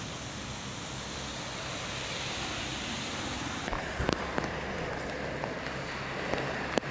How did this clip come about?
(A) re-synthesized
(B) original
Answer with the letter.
B